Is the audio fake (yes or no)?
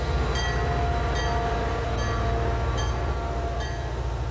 no